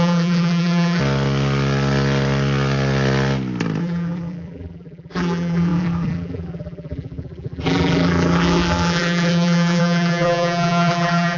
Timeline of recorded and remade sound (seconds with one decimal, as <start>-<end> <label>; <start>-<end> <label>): 0.0-1.0 remade; 1.0-3.8 recorded; 3.8-11.4 remade